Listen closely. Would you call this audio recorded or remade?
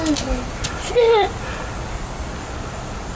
recorded